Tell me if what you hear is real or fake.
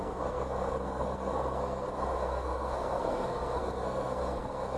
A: fake